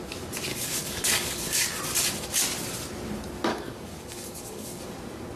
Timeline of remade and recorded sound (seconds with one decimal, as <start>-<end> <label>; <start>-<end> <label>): 0.0-0.5 recorded; 0.5-1.8 remade; 1.8-3.5 recorded; 3.5-4.8 remade; 4.8-5.4 recorded